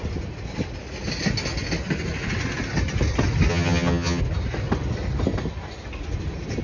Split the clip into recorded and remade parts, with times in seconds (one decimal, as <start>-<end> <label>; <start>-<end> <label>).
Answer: 0.0-3.5 recorded; 3.5-4.2 remade; 4.2-6.6 recorded